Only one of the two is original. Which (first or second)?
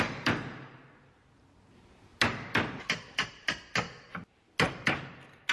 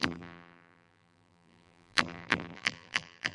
first